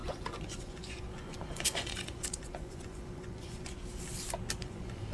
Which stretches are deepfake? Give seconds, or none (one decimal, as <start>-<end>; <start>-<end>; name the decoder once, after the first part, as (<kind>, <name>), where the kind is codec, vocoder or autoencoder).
0.0-3.8 (vocoder, Vocos); 4.6-5.1